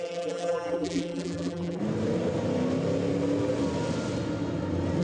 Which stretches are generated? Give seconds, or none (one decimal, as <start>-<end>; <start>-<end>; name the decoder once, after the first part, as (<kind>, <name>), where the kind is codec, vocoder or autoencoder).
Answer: 0.0-1.8 (vocoder, BigVGAN v2)